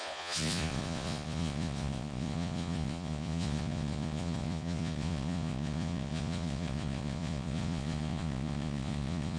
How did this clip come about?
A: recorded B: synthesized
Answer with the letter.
B